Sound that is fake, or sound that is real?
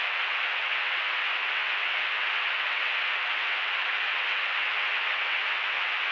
fake